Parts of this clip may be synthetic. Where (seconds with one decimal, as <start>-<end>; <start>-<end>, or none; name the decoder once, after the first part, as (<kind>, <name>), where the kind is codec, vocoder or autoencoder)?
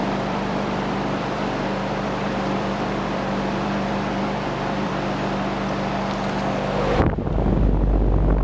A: 0.0-4.9 (vocoder, BigVGAN v2)